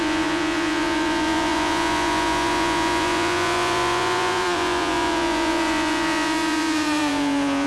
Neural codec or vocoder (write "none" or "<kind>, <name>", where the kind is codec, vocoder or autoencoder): vocoder, Vocos